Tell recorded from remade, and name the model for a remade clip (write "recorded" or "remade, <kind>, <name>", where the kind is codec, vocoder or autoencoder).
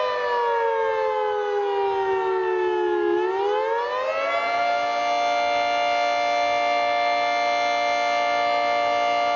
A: recorded